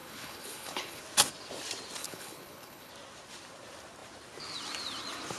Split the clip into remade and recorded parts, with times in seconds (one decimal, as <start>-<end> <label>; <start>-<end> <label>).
0.0-1.0 remade; 1.0-2.0 recorded; 2.0-2.9 remade; 2.9-5.4 recorded